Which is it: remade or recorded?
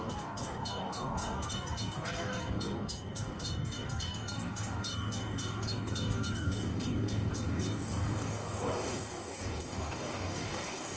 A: remade